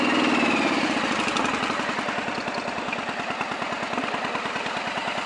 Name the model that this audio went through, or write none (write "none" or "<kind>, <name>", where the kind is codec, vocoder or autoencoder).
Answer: none